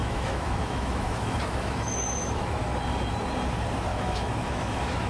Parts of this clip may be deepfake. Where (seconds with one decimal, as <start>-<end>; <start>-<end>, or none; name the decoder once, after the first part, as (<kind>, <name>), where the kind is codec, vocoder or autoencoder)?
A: 0.0-2.6 (autoencoder, DAC-VAE); 3.9-5.1